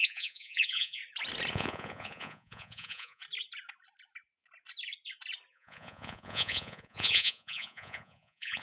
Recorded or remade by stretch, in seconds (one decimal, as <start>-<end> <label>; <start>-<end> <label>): 0.0-1.0 remade; 1.0-1.5 recorded; 1.5-3.2 remade; 3.2-5.5 recorded; 5.5-8.6 remade